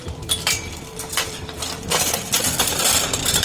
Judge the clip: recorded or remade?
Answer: remade